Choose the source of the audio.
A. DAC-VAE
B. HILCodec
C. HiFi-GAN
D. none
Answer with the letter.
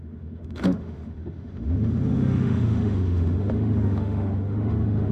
A